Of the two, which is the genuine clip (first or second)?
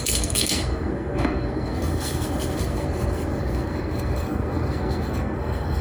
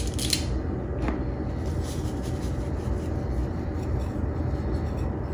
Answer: second